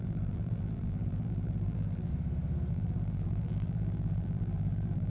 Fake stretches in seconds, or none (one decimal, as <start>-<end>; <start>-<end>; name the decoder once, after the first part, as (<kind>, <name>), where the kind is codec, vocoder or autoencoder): 0.0-2.1 (vocoder, BigVGAN v2); 2.7-5.1

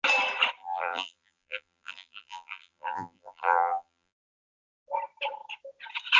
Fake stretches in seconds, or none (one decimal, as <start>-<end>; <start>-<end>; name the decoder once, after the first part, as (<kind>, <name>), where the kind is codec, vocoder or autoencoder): 0.6-4.3 (vocoder, BigVGAN v2)

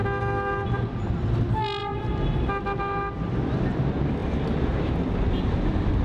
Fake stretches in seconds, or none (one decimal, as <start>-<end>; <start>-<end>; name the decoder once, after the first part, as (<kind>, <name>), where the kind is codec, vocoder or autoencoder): 1.8-3.2 (vocoder, BigVGAN v2); 4.2-5.0